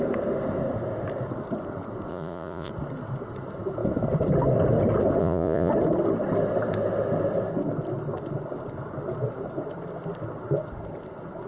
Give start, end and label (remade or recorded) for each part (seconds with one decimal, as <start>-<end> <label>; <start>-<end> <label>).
0.0-2.1 recorded; 2.1-2.7 remade; 2.7-5.2 recorded; 5.2-5.7 remade; 5.7-11.5 recorded